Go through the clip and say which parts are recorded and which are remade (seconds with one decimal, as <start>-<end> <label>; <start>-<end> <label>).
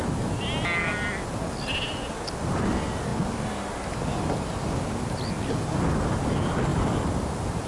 0.0-6.7 recorded; 6.7-7.3 remade; 7.3-7.7 recorded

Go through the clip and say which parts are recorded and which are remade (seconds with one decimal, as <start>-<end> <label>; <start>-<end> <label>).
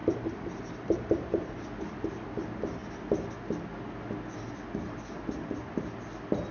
0.0-1.6 remade; 1.6-6.5 recorded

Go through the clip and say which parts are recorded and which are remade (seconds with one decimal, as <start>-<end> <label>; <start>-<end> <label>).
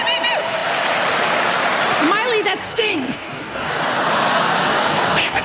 0.0-2.6 recorded; 2.6-3.8 remade; 3.8-4.7 recorded; 4.7-5.4 remade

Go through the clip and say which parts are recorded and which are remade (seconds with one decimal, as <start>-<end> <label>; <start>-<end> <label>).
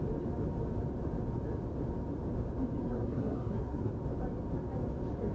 0.0-2.8 recorded; 2.8-3.9 remade; 3.9-5.3 recorded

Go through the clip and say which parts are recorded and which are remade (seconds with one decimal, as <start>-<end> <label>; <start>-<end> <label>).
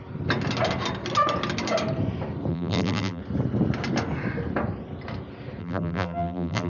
0.0-2.5 recorded; 2.5-3.2 remade; 3.2-5.6 recorded; 5.6-6.7 remade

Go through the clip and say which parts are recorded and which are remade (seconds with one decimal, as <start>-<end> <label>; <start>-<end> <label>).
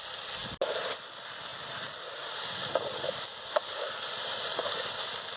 0.0-5.4 recorded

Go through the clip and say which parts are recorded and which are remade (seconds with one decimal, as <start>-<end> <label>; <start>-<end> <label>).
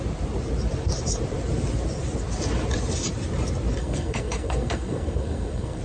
0.0-3.8 recorded; 3.8-5.8 remade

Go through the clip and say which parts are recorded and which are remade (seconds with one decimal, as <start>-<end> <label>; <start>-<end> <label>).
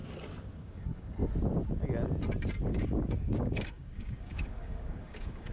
0.0-0.6 recorded; 0.6-1.2 remade; 1.2-2.7 recorded; 2.7-5.5 remade